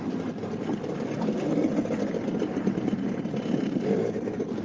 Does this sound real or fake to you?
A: real